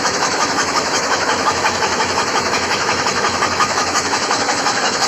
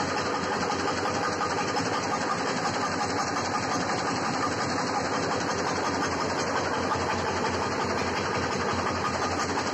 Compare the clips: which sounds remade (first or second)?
first